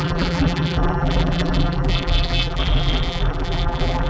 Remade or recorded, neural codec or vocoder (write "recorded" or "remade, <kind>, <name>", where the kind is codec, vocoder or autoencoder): remade, vocoder, BigVGAN v2